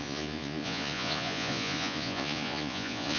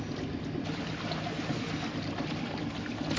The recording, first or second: second